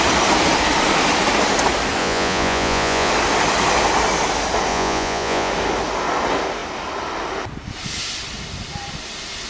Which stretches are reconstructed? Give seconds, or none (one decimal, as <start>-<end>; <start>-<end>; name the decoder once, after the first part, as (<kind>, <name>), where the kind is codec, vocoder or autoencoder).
2.0-3.1 (vocoder, Vocos); 4.7-5.5